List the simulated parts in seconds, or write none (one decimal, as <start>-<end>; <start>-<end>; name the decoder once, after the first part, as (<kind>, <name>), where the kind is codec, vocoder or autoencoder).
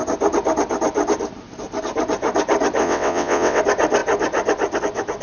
2.8-3.6 (vocoder, WaveNeXt)